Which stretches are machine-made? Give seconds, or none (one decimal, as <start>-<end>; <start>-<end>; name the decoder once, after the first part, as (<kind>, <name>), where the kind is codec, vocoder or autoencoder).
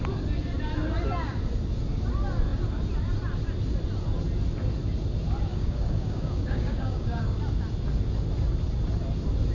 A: 5.5-7.4 (codec, DAC)